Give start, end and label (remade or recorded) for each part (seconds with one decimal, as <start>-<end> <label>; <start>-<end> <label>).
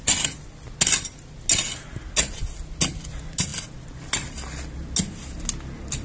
0.0-6.0 recorded